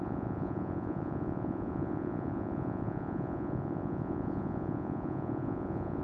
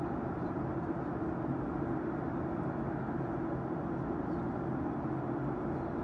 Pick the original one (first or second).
second